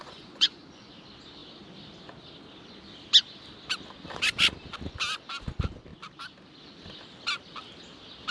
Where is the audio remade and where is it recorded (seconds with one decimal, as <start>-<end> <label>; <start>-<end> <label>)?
0.0-0.9 remade; 0.9-8.3 recorded